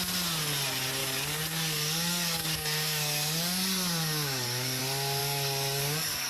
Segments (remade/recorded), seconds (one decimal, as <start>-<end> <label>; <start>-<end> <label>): 0.0-1.0 recorded; 1.0-4.8 remade; 4.8-5.2 recorded; 5.2-6.3 remade